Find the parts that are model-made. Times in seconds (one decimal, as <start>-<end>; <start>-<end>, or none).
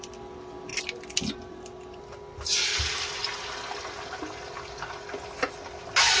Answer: none